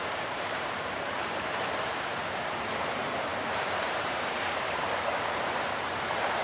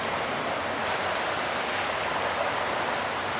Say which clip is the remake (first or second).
first